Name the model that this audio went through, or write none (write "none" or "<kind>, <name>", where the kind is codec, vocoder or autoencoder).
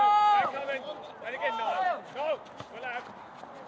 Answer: none